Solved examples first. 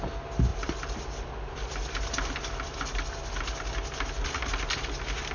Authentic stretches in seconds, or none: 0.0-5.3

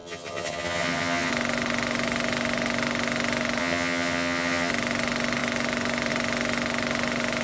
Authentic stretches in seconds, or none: 1.3-3.6; 4.7-7.4

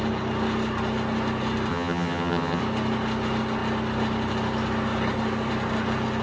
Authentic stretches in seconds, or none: 0.0-1.7; 2.6-6.2

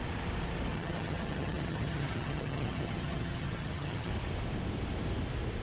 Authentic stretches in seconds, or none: 0.0-0.7; 4.1-5.6

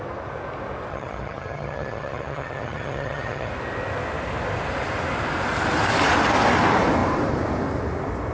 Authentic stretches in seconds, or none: 0.0-0.9; 3.5-8.3

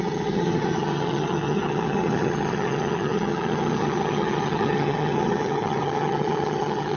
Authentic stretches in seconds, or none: none

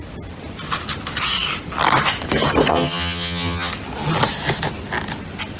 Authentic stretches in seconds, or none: 0.0-2.7; 3.7-5.6

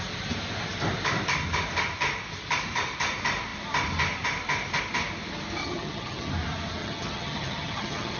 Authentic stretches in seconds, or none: 0.0-5.6; 6.3-6.8